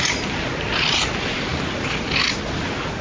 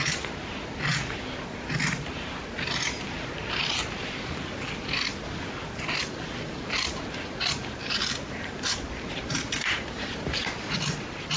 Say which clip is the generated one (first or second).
second